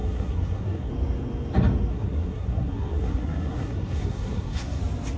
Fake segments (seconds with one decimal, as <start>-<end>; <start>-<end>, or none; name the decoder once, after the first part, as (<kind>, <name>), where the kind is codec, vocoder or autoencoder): 0.0-0.9 (codec, SNAC); 1.9-4.8